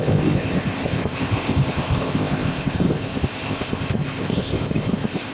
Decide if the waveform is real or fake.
fake